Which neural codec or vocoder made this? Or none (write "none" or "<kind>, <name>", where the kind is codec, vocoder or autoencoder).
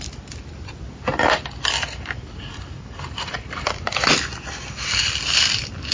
none